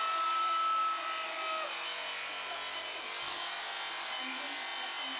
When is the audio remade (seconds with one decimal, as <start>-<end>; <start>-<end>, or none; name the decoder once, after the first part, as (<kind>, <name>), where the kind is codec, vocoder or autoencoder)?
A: none